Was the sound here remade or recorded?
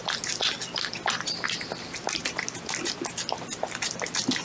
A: recorded